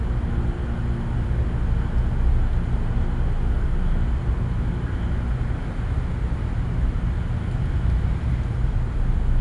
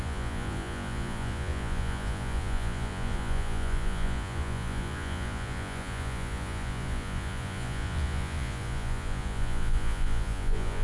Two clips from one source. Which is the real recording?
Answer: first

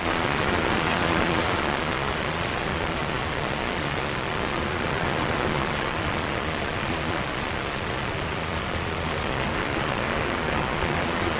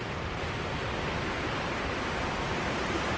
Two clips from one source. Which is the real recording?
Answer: second